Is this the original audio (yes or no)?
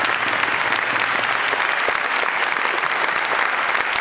yes